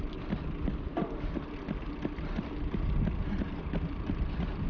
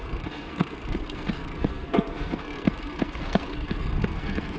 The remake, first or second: second